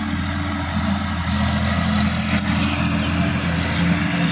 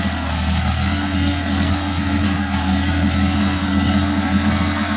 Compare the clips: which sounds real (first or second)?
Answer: first